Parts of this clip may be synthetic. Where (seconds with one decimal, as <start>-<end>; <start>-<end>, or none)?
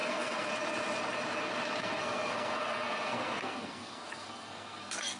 0.0-0.5; 1.8-5.2